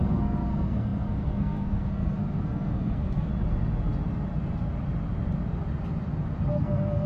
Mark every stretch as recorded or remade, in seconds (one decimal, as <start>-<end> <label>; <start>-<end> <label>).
0.0-3.3 remade; 3.3-6.5 recorded; 6.5-7.1 remade